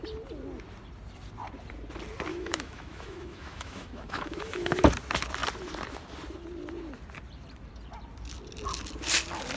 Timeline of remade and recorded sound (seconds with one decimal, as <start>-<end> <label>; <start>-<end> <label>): 0.0-2.3 recorded; 2.3-4.9 remade; 4.9-9.6 recorded